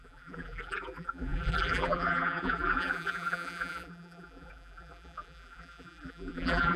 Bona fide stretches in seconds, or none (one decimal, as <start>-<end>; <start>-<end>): none